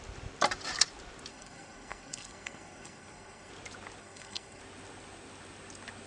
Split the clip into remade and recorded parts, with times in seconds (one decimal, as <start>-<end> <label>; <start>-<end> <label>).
0.0-1.3 recorded; 1.3-3.5 remade; 3.5-4.0 recorded; 4.0-4.6 remade; 4.6-6.1 recorded